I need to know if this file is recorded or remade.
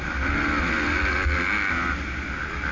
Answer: recorded